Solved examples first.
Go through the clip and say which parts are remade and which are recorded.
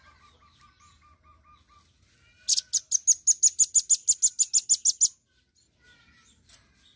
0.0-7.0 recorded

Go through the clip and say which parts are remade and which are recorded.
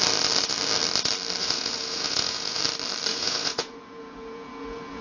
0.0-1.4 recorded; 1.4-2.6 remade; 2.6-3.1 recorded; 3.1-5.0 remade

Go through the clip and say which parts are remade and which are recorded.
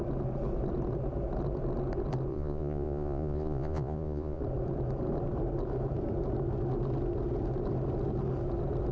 0.0-2.3 recorded; 2.3-4.4 remade; 4.4-8.9 recorded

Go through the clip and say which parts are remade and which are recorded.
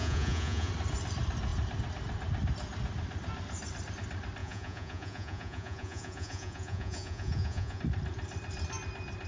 0.0-0.7 remade; 0.7-4.4 recorded; 4.4-7.8 remade; 7.8-9.3 recorded